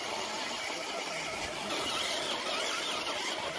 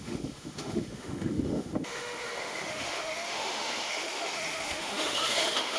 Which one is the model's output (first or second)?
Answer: second